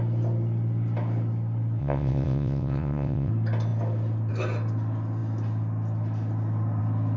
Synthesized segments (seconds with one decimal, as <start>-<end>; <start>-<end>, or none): 1.8-3.3

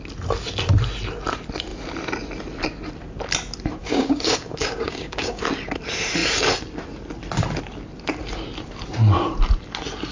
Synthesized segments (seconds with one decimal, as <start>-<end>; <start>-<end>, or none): 3.8-5.4

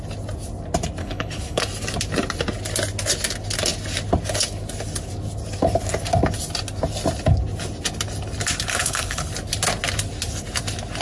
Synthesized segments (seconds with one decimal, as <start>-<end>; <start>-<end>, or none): 1.0-1.6; 8.7-9.3

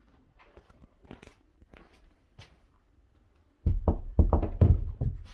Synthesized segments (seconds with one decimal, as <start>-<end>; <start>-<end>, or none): none

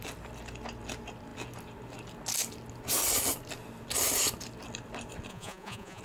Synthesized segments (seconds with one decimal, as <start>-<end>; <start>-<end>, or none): 5.3-6.0

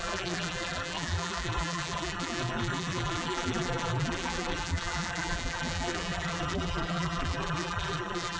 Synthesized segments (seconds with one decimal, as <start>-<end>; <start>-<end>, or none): 0.0-8.4

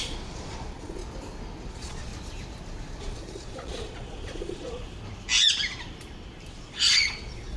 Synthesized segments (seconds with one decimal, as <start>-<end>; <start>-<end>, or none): 0.0-1.0; 1.7-2.1; 3.0-4.8; 6.5-7.6

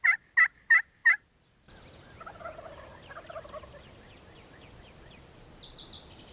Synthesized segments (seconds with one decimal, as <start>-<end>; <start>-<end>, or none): none